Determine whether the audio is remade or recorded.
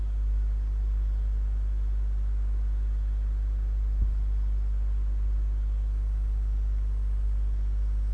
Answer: recorded